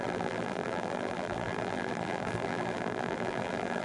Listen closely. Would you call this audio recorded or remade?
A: remade